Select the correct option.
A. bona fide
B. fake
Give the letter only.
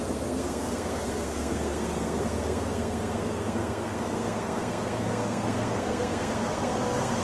B